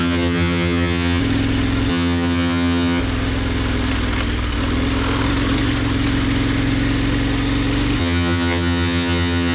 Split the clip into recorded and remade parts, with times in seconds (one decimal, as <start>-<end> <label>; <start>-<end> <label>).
0.0-1.2 remade; 1.2-1.9 recorded; 1.9-3.0 remade; 3.0-8.0 recorded; 8.0-9.5 remade